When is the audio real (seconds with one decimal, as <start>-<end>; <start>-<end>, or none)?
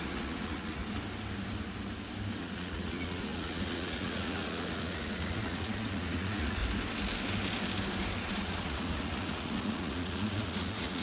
0.8-2.4; 6.6-8.2